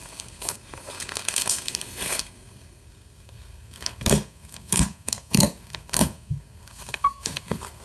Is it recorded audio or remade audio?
remade